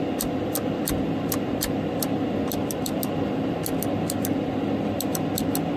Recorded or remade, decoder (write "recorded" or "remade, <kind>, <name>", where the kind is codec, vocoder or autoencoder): recorded